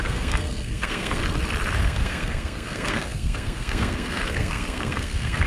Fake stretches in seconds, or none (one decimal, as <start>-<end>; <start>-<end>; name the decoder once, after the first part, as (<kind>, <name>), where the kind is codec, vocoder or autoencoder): 0.0-1.2 (codec, SNAC); 1.8-5.5